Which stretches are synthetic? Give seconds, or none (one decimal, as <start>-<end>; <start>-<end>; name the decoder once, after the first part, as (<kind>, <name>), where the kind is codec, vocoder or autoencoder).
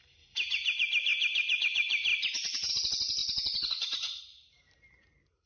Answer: 0.0-5.5 (vocoder, BigVGAN v2)